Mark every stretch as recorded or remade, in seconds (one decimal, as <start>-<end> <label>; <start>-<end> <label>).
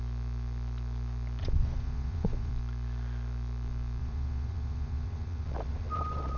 0.0-1.4 recorded; 1.4-2.5 remade; 2.5-4.0 recorded; 4.0-6.4 remade